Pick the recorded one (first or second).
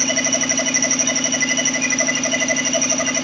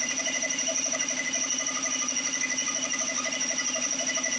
first